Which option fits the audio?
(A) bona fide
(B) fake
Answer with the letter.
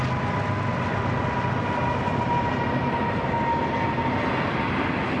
A